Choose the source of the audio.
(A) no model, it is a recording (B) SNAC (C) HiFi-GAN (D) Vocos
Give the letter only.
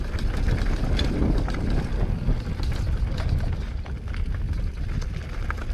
A